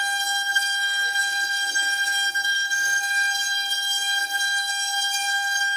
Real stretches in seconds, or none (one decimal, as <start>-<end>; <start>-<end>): none